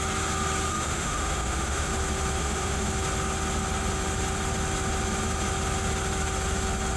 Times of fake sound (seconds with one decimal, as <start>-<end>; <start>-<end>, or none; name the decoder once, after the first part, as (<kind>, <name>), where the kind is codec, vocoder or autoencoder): 0.7-1.9 (autoencoder, DAC-VAE); 2.4-2.9